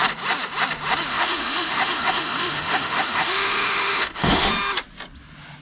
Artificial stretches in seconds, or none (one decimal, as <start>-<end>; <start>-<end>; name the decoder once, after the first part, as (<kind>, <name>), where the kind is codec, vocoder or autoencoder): 1.1-4.5 (autoencoder, DAC-VAE)

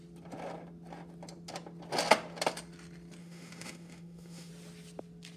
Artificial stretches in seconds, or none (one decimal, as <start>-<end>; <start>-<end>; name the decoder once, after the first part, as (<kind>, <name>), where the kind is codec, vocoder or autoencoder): 3.2-4.5 (autoencoder, DAC-VAE)

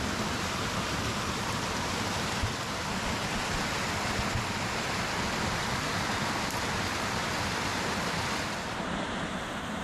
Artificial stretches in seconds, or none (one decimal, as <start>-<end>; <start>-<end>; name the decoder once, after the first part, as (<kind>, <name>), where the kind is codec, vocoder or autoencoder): none

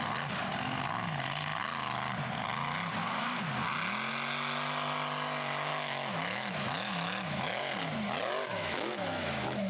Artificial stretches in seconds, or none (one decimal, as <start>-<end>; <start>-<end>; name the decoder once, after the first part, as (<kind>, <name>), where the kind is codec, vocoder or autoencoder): 5.7-7.6 (autoencoder, DAC-VAE); 8.5-9.7

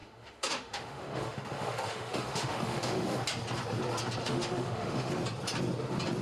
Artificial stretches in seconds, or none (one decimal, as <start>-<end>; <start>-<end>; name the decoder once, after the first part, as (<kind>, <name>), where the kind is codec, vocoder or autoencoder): 0.0-3.2 (autoencoder, DAC-VAE); 4.2-5.1

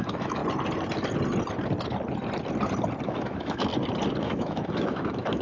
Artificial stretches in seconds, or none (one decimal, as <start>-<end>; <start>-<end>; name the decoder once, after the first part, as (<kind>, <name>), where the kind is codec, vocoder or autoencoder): 0.0-0.4 (autoencoder, DAC-VAE); 3.0-3.7; 4.2-5.4